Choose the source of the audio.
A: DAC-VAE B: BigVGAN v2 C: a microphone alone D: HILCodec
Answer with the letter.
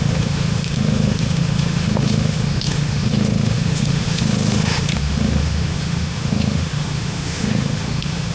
A